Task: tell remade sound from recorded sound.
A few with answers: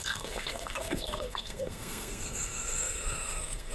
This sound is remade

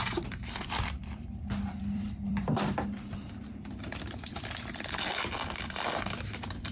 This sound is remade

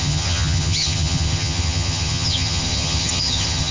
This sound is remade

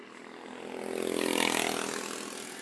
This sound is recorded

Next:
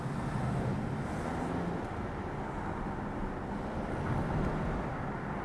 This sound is recorded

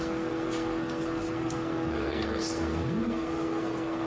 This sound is remade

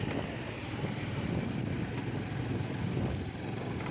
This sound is recorded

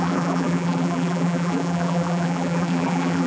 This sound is remade